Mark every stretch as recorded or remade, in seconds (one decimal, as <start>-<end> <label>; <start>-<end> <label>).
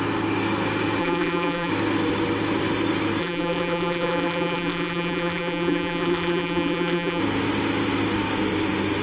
0.0-1.0 recorded; 1.0-1.7 remade; 1.7-3.2 recorded; 3.2-7.2 remade; 7.2-9.0 recorded